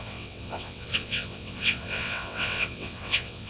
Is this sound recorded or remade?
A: remade